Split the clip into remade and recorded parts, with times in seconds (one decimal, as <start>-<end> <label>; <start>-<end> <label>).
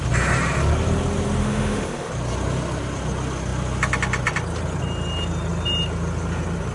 0.0-1.4 recorded; 1.4-2.1 remade; 2.1-6.7 recorded